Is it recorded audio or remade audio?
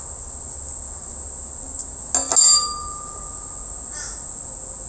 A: recorded